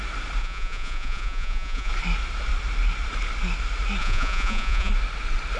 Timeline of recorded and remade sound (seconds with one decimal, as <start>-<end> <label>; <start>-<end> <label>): 0.0-0.4 recorded; 0.4-1.9 remade; 1.9-4.0 recorded; 4.0-4.9 remade; 4.9-5.6 recorded